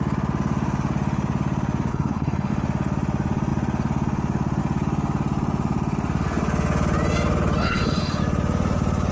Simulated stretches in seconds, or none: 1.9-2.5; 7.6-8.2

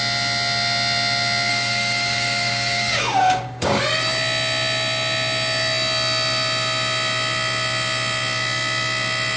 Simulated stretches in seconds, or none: 1.5-3.8

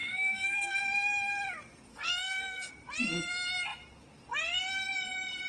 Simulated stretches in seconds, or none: 0.0-0.8; 1.9-2.7

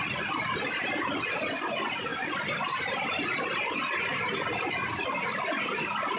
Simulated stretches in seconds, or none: none

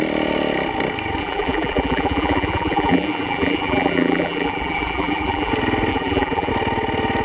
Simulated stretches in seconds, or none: 1.2-5.5; 5.9-6.5

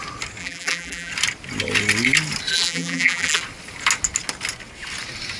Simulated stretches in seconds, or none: 0.4-1.1; 2.5-3.4